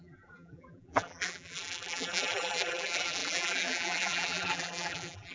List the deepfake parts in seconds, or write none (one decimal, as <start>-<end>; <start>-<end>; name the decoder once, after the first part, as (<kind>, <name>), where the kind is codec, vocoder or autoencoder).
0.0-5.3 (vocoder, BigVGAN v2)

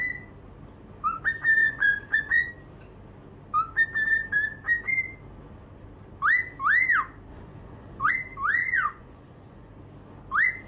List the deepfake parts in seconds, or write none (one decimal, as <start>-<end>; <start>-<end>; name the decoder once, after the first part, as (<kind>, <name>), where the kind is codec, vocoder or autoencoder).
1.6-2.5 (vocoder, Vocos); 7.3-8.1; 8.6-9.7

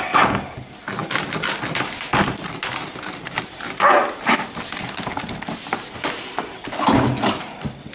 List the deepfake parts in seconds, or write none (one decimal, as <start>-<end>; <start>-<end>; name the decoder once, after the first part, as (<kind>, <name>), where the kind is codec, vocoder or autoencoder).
none

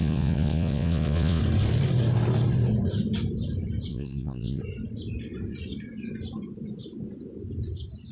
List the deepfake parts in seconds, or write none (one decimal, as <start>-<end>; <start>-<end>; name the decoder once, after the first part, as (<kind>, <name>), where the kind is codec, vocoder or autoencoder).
0.0-1.4 (vocoder, Vocos); 3.9-4.6

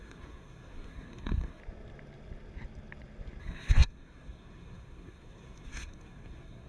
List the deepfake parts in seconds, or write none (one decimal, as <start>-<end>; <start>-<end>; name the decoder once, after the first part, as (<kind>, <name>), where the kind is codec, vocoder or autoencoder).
0.0-1.6 (codec, SNAC); 3.4-6.7

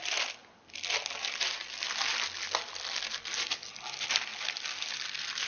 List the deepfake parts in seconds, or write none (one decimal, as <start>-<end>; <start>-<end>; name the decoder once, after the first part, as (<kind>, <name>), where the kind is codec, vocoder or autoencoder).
none